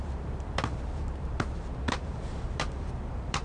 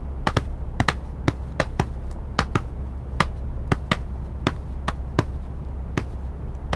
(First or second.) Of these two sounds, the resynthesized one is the first